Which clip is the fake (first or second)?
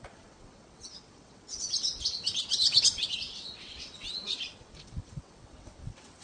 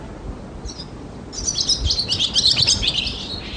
first